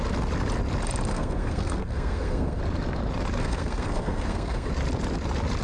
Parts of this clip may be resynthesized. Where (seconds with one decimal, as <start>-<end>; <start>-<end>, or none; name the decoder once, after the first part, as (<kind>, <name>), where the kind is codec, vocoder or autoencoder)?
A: 1.1-2.6 (codec, SNAC); 3.4-4.7